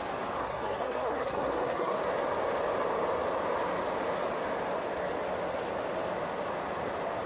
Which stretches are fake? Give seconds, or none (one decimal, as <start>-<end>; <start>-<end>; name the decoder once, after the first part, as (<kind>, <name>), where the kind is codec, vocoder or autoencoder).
0.4-2.0 (codec, SNAC)